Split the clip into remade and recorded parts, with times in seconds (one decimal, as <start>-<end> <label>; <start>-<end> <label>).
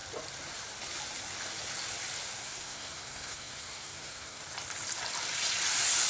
0.0-2.4 recorded; 2.4-4.4 remade; 4.4-6.1 recorded